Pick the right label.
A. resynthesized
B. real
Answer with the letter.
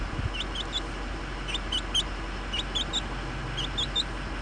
B